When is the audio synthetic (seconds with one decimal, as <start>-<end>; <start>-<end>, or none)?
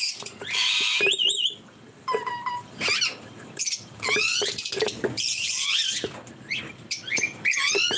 none